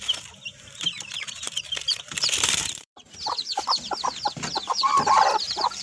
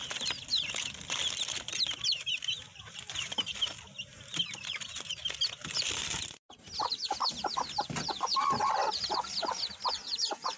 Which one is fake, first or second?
first